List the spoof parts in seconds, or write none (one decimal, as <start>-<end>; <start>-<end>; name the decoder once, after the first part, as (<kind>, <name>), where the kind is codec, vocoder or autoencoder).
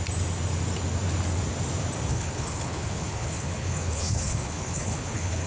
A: 2.1-5.5 (codec, HILCodec)